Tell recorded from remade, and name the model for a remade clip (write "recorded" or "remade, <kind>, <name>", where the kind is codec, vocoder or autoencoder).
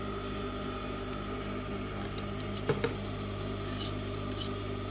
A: recorded